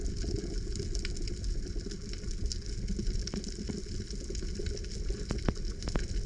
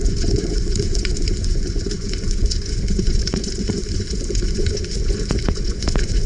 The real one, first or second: first